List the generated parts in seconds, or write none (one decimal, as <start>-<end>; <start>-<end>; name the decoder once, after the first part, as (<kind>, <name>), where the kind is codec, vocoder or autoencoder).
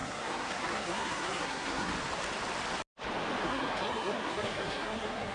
0.0-1.9 (codec, SNAC); 3.4-5.3